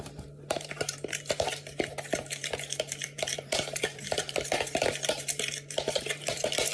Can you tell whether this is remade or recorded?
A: remade